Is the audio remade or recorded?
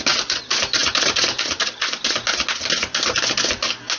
recorded